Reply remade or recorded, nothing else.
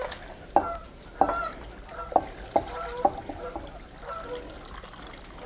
recorded